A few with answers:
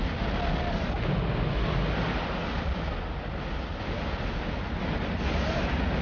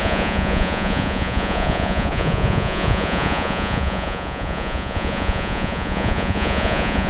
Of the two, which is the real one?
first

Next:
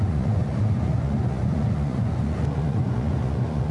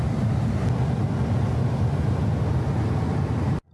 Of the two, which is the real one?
second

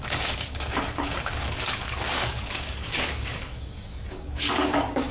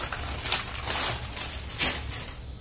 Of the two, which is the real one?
second